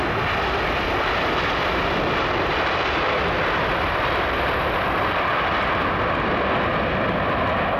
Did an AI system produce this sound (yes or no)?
no